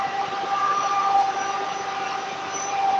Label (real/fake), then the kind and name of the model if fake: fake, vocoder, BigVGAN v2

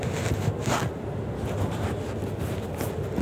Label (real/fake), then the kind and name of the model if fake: real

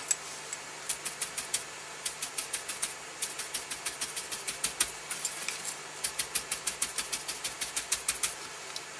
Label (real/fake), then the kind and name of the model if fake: real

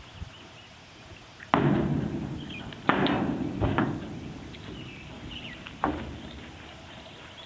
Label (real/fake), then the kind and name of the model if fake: real